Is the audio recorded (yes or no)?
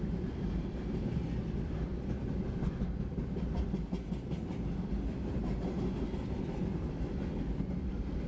yes